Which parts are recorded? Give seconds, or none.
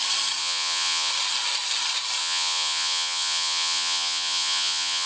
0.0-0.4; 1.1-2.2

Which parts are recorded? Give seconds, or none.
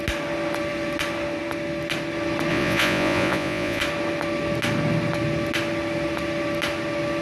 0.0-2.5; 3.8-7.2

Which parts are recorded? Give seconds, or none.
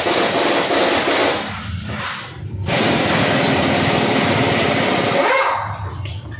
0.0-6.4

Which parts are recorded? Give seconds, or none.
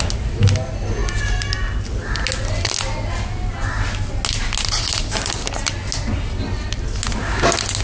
0.0-7.8